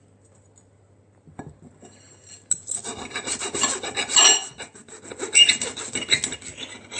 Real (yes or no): yes